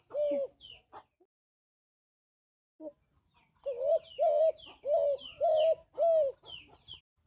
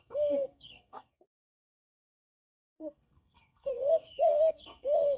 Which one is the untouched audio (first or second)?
first